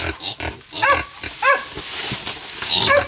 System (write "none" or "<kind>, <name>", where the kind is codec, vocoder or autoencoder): none